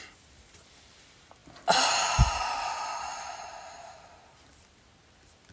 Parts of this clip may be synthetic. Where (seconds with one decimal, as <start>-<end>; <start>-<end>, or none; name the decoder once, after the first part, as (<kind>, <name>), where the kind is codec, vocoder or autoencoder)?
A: none